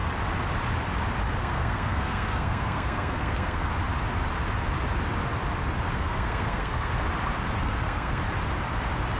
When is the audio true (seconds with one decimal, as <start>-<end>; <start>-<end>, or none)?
0.0-1.4; 3.7-5.9; 6.9-7.6; 8.2-9.2